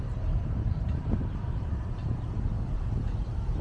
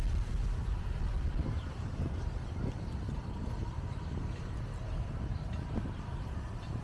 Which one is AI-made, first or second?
first